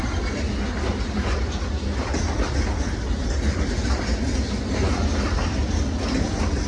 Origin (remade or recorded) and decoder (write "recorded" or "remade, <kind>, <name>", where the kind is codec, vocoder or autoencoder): recorded